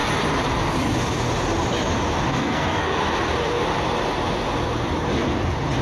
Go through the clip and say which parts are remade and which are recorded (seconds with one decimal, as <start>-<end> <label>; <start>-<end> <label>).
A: 0.0-2.3 recorded; 2.3-3.0 remade; 3.0-5.8 recorded